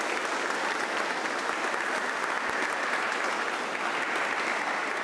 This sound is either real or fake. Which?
real